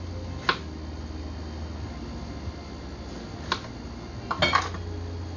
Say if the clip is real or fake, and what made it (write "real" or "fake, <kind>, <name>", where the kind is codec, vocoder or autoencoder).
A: real